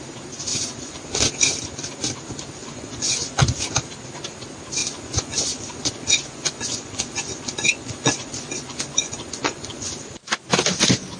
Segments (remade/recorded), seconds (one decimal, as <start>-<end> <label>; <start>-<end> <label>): 0.0-0.5 recorded; 0.5-1.3 remade; 1.3-2.6 recorded; 2.6-3.4 remade; 3.4-4.8 recorded; 4.8-9.9 remade; 9.9-11.2 recorded